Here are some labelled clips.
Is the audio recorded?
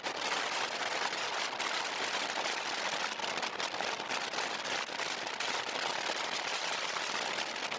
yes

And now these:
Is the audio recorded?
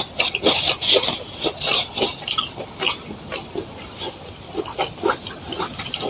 yes